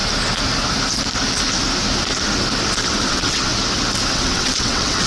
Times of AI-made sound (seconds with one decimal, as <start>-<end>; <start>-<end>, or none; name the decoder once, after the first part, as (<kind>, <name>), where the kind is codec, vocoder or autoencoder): 3.1-3.5 (vocoder, WaveNeXt); 4.1-5.1